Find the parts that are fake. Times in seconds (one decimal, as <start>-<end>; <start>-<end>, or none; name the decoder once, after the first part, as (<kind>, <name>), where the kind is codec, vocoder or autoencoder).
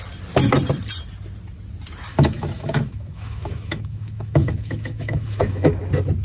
2.1-5.8 (autoencoder, DAC-VAE)